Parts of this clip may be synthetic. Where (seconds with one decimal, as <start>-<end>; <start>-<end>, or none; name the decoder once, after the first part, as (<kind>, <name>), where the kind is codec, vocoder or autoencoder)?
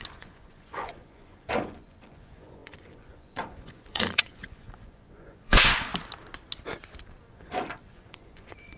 0.0-5.9 (vocoder, Vocos); 7.3-8.8